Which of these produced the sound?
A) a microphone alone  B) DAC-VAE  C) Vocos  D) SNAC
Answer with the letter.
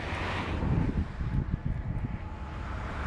A